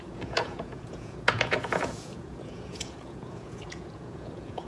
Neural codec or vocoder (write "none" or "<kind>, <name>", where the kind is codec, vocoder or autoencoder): vocoder, Vocos